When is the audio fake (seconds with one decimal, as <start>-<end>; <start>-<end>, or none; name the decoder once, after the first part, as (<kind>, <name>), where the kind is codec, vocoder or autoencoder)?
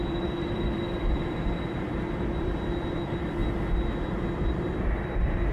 0.0-3.4 (vocoder, BigVGAN v2); 4.5-5.5